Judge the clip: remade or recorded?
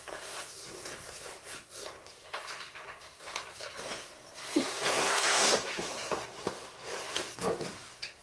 remade